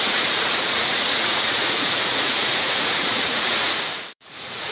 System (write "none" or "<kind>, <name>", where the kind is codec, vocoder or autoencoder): vocoder, Vocos